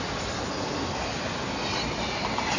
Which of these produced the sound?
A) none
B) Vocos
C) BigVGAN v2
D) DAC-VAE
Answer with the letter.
A